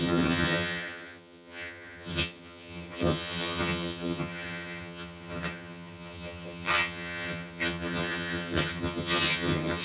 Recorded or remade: remade